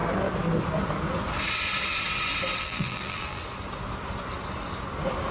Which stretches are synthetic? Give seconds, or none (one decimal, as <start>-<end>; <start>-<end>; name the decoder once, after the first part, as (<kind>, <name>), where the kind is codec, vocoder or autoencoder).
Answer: 2.6-3.4 (vocoder, BigVGAN v2)